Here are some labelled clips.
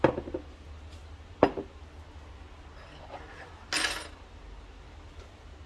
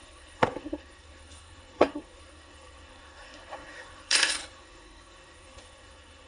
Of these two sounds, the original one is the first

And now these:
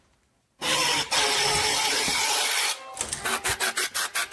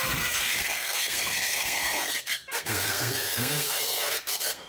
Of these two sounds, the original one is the first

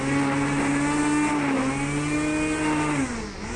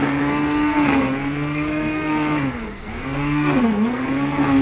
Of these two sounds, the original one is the first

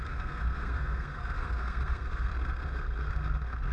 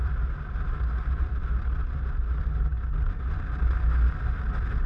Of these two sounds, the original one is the second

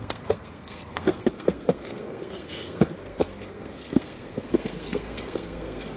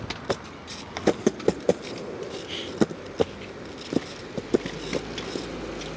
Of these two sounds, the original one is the second